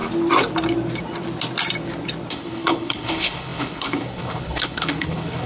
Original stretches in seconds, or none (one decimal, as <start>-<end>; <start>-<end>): 0.0-2.3